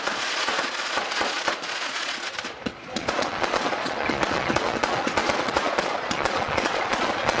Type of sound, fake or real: fake